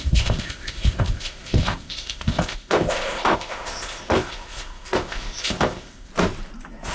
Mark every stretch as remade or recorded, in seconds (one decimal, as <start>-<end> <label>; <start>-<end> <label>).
0.0-6.1 remade; 6.1-6.9 recorded